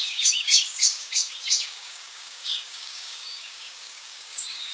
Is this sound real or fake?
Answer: fake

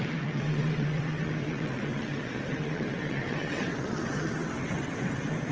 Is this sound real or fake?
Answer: fake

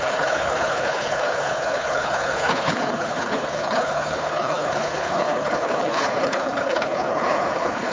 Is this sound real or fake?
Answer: fake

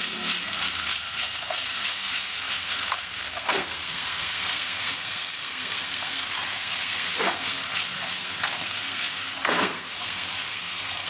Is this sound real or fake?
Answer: fake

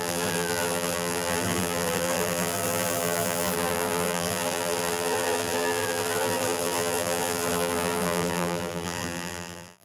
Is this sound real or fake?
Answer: fake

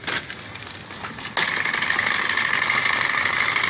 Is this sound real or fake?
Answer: real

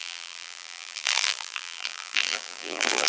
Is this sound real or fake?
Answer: fake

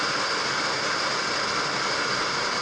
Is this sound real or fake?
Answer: real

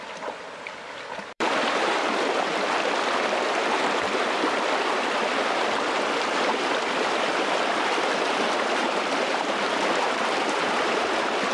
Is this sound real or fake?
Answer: fake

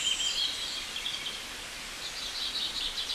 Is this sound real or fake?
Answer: real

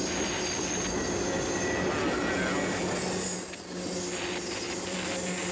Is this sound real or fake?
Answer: real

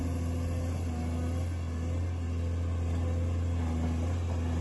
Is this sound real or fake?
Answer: real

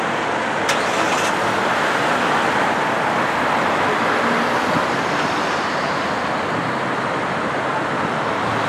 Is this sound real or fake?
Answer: real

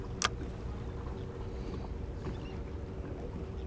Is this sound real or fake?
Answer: real